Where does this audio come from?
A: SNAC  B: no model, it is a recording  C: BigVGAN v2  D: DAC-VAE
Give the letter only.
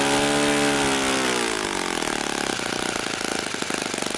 B